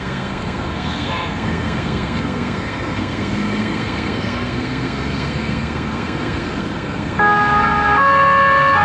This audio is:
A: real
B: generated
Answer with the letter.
B